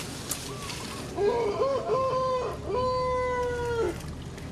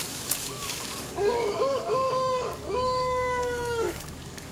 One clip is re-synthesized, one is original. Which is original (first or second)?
first